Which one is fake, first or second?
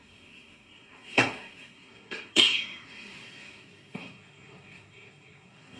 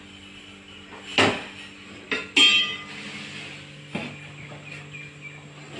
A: first